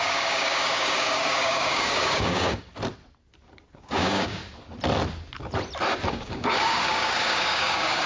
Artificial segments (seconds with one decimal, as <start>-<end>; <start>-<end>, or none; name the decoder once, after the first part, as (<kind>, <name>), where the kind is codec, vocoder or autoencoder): 0.0-2.7 (codec, DAC); 3.7-4.4; 6.1-8.1